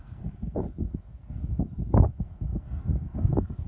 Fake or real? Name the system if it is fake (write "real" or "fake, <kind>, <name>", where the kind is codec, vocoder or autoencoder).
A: fake, codec, SNAC